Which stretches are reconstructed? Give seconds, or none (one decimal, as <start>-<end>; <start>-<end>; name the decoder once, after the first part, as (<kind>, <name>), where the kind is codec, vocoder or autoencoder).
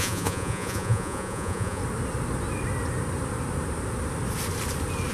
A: 0.0-1.8 (vocoder, Vocos)